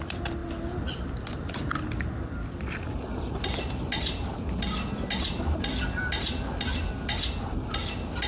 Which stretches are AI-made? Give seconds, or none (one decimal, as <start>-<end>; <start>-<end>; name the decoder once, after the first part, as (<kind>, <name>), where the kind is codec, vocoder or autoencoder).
none